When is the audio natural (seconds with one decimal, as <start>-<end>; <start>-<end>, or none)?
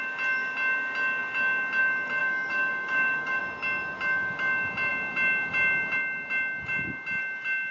0.0-2.2; 3.4-7.7